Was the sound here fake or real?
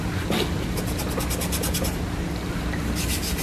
real